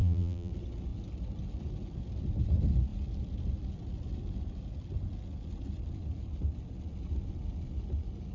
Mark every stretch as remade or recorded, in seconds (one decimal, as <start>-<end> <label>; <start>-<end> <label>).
0.0-0.5 remade; 0.5-8.3 recorded